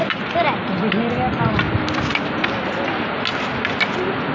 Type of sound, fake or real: real